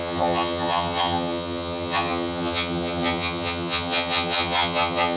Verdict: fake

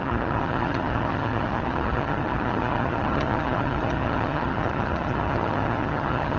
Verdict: fake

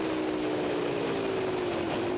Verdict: real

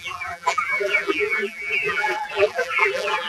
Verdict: fake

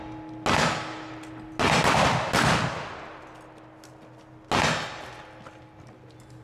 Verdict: real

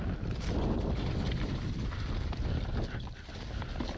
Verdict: fake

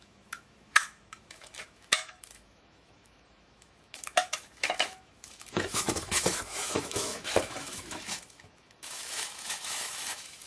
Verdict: fake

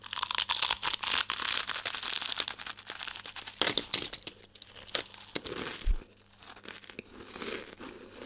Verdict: real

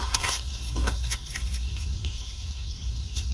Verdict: fake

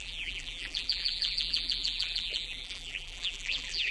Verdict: fake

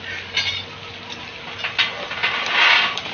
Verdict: real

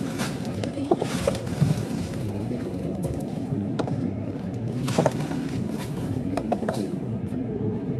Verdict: fake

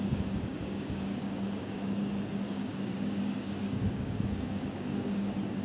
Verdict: fake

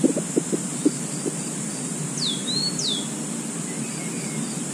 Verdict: real